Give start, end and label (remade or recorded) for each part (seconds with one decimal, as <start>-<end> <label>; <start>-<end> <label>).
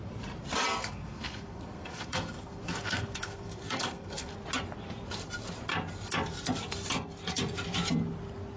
0.0-0.8 recorded; 0.8-4.3 remade; 4.3-8.6 recorded